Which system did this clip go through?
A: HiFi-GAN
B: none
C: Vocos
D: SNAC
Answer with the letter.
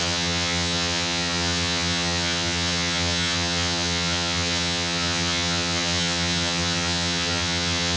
A